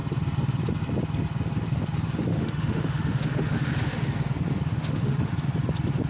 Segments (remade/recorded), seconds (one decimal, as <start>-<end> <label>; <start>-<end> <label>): 0.0-2.3 recorded; 2.3-4.1 remade; 4.1-4.7 recorded; 4.7-5.3 remade; 5.3-6.1 recorded